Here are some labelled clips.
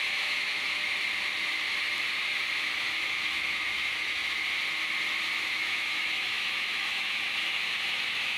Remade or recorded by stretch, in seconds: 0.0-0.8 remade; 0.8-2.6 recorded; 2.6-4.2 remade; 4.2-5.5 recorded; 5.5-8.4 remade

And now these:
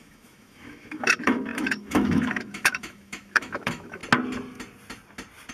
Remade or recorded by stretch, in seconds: 0.0-4.0 remade; 4.0-5.5 recorded

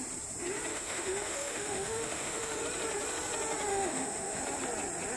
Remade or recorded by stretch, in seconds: 0.0-0.7 recorded; 0.7-2.6 remade; 2.6-3.7 recorded; 3.7-4.4 remade; 4.4-5.2 recorded